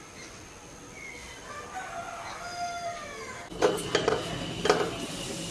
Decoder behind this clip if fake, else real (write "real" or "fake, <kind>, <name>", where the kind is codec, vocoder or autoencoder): real